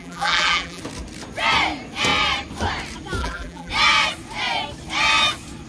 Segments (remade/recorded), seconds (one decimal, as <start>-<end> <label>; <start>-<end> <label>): 0.0-0.8 remade; 0.8-3.2 recorded; 3.2-3.7 remade; 3.7-5.7 recorded